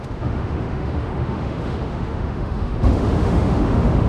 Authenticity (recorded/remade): remade